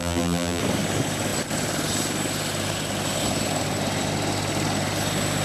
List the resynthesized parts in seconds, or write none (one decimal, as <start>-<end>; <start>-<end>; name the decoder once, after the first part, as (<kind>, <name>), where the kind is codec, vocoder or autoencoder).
0.0-0.6 (vocoder, BigVGAN v2)